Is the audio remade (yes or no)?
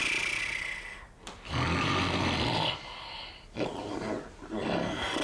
no